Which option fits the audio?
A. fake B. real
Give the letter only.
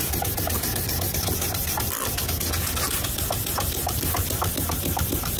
B